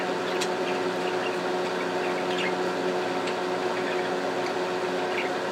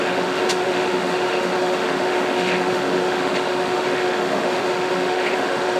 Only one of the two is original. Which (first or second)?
first